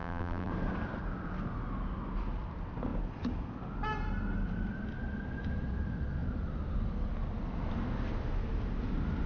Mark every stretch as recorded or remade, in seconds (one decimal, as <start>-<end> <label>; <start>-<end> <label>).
0.0-0.5 remade; 0.5-9.3 recorded